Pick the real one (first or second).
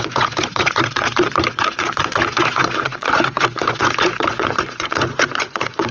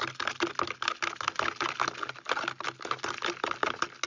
second